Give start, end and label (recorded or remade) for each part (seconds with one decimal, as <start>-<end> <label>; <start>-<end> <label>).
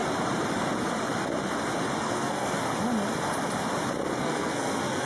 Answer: 0.0-2.0 recorded; 2.0-2.6 remade; 2.6-4.2 recorded; 4.2-5.1 remade